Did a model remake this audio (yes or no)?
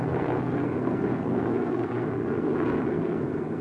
yes